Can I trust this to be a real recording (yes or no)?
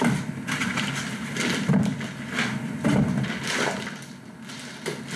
yes